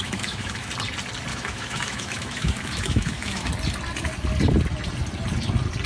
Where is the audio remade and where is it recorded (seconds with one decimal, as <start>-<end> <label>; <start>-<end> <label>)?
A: 0.0-0.7 remade; 0.7-1.3 recorded; 1.3-3.5 remade; 3.5-5.9 recorded